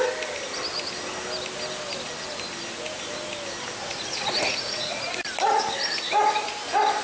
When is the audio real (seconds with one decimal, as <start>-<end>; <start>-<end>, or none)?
0.0-3.8; 5.2-7.0